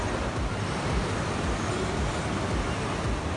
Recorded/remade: recorded